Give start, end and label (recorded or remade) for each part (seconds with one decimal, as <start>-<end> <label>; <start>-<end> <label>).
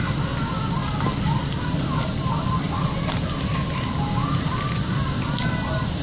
0.0-6.0 recorded